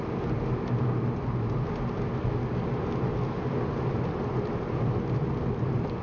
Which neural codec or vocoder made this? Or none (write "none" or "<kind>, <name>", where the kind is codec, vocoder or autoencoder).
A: none